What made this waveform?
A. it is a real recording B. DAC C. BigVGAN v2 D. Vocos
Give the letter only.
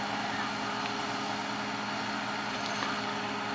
A